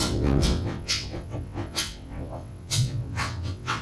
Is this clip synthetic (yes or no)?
yes